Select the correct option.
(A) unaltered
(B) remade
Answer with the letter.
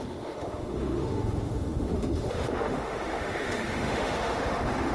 B